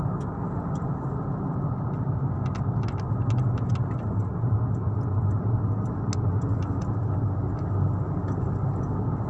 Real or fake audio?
real